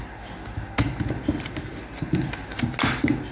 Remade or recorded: recorded